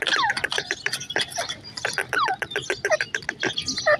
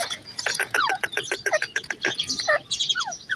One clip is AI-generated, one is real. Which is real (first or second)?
first